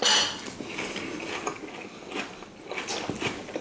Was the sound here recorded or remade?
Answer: recorded